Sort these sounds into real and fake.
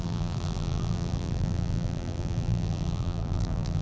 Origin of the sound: fake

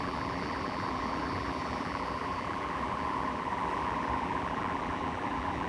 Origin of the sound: fake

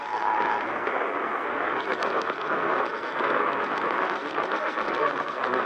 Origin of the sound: fake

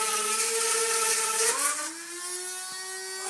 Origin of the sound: real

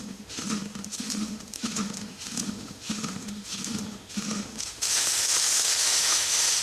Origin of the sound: fake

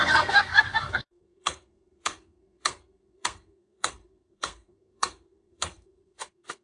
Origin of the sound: fake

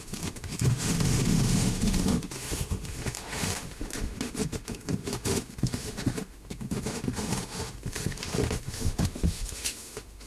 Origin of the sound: fake